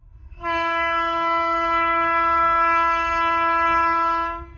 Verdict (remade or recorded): remade